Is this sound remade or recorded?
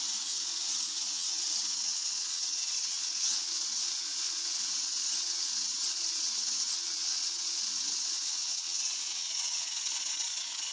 remade